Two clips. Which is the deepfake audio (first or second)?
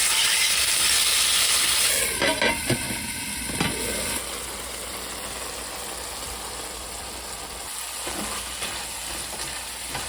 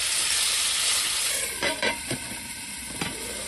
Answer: second